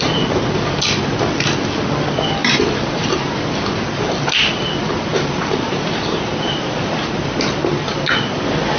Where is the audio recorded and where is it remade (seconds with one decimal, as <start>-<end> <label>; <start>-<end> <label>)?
0.0-2.4 recorded; 2.4-3.3 remade; 3.3-5.1 recorded; 5.1-7.2 remade; 7.2-8.8 recorded